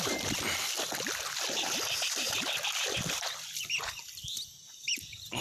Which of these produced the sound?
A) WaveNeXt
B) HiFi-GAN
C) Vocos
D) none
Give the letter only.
D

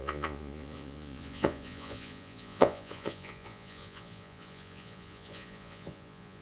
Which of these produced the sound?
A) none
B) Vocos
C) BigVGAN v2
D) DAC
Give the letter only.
B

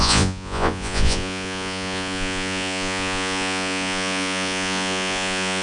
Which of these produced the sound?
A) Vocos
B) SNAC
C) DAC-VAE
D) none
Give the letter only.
A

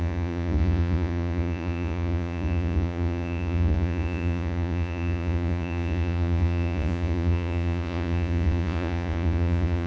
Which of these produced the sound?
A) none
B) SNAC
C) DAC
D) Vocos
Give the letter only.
D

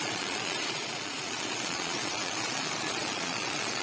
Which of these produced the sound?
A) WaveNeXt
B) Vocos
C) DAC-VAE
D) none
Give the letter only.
B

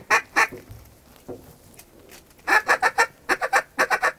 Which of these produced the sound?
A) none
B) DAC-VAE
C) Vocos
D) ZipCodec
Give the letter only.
A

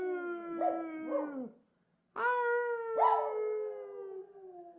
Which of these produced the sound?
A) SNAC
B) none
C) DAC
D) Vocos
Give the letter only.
B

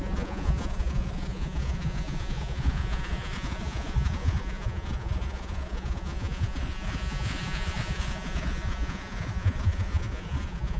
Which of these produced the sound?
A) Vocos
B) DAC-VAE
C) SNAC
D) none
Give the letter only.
A